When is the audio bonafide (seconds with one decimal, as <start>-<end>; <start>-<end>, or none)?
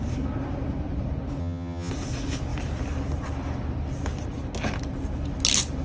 0.0-1.4; 1.9-5.8